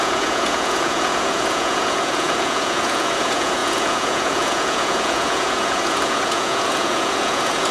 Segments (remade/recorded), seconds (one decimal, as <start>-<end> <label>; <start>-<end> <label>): 0.0-7.7 remade